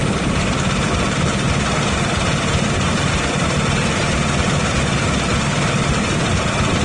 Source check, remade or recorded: recorded